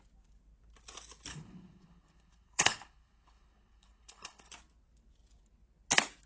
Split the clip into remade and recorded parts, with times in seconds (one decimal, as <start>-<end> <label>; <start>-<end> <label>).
0.0-1.3 recorded; 1.3-4.5 remade; 4.5-6.3 recorded